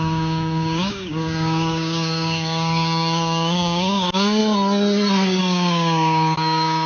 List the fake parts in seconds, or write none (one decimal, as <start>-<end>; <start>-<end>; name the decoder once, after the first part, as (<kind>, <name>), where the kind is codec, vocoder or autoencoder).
0.0-4.4 (codec, DAC); 5.4-6.9